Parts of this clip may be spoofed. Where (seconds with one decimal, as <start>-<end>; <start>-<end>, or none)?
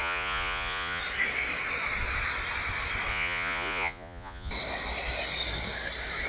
0.0-1.0; 3.1-4.5